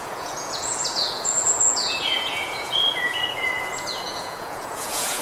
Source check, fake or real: fake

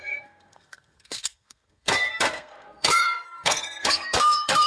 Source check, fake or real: fake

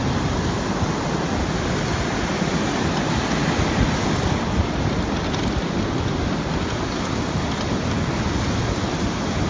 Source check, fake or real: real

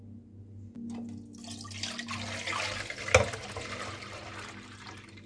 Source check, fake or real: real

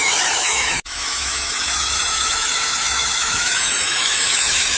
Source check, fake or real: fake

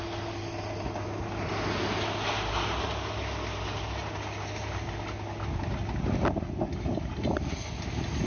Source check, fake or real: real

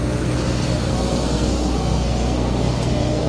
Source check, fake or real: fake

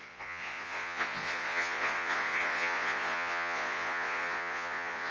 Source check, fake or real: fake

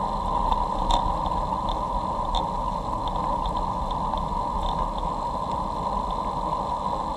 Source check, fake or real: real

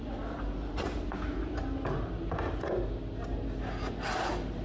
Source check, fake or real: real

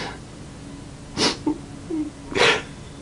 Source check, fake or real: real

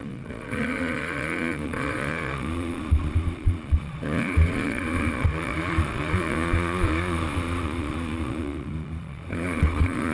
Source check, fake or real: fake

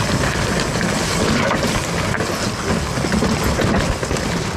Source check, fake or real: real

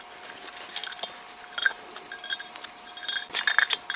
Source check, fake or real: real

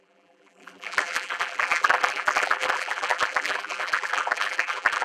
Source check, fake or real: fake